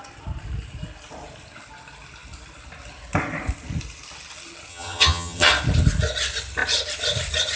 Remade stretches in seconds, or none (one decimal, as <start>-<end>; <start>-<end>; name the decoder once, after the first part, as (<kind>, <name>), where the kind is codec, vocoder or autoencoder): 4.7-5.5 (vocoder, HiFi-GAN)